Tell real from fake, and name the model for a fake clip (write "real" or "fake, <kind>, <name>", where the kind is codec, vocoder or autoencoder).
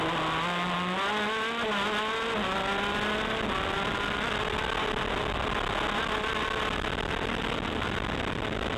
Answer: real